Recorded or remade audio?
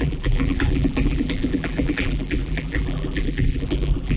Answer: remade